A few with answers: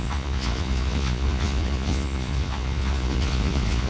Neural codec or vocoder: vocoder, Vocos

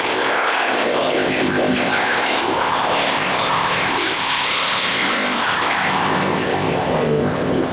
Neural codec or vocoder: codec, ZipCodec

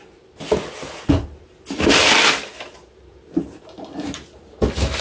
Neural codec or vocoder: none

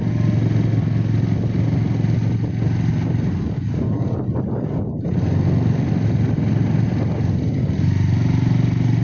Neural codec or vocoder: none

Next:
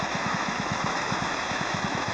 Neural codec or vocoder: autoencoder, DAC-VAE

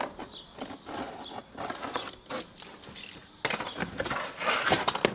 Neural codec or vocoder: none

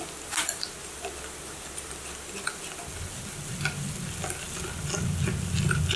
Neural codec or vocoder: none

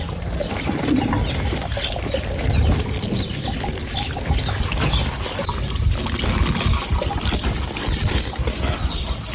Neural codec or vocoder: none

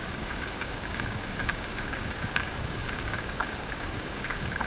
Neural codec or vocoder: codec, DAC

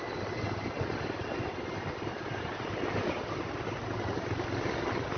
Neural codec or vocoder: none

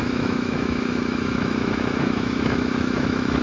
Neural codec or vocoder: autoencoder, DAC-VAE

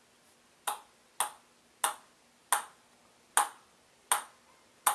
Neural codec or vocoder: none